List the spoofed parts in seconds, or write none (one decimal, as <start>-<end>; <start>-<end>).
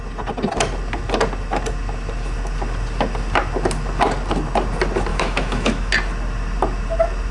5.1-5.9